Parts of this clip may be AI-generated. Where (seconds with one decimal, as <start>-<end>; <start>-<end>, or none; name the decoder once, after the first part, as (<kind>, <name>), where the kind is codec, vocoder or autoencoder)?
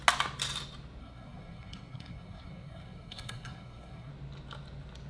1.0-4.1 (codec, SNAC)